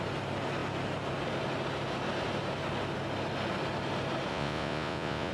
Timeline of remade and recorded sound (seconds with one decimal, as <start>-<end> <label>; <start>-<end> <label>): 0.0-4.3 recorded; 4.3-5.3 remade